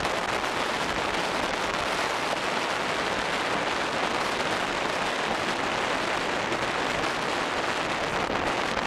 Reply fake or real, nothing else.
real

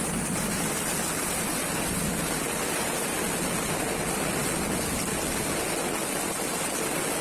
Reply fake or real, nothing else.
real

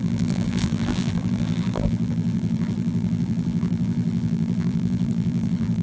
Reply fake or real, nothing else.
fake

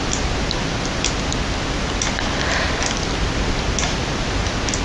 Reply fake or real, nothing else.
real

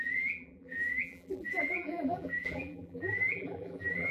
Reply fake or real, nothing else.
fake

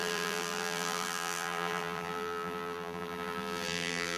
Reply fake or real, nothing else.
fake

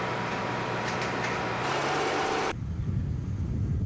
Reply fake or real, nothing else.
fake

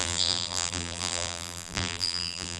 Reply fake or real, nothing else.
fake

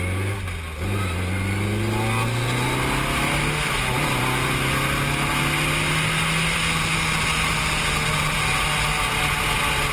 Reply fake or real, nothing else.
real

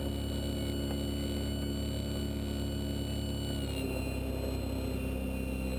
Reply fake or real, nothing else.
real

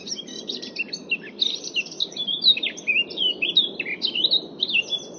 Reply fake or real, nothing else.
fake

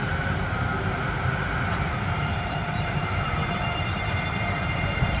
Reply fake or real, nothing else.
fake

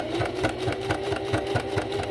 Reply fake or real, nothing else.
real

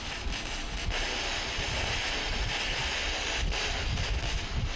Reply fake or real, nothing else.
real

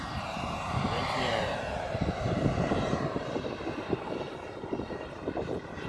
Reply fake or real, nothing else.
fake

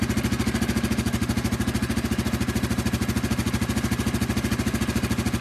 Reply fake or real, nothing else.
real